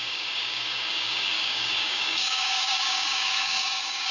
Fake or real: fake